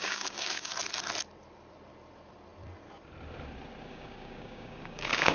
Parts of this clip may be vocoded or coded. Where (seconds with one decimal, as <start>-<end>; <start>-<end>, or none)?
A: 0.0-0.7; 3.9-5.3